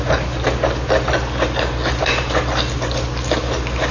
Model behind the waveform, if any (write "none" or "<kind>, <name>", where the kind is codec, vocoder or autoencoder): none